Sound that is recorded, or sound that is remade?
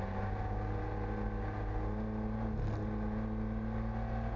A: recorded